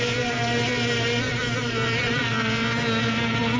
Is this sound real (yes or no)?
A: yes